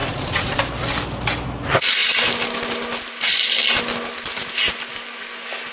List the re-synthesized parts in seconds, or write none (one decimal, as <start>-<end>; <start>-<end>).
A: 0.0-0.6